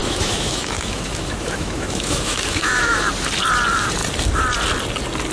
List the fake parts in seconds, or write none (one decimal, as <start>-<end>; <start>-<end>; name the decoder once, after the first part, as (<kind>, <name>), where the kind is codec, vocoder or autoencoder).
0.0-3.0 (autoencoder, DAC-VAE)